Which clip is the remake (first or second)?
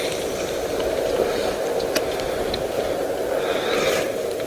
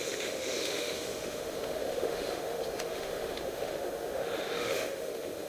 second